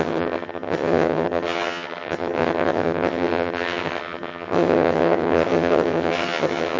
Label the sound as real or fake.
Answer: fake